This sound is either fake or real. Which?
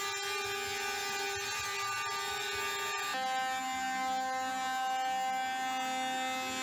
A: real